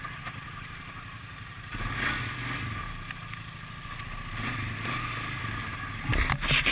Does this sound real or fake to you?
real